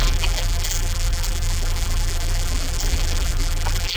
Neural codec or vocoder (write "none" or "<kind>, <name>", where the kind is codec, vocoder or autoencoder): vocoder, BigVGAN v2